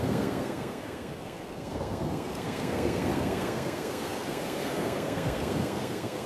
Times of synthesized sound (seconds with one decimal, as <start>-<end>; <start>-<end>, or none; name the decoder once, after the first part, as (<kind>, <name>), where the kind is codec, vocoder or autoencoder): 0.0-6.3 (codec, SNAC)